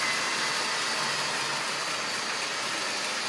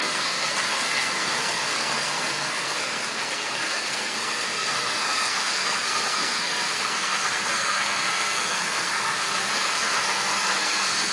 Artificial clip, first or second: second